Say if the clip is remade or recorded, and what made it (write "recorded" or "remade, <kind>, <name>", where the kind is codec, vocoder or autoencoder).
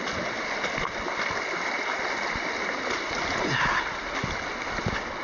recorded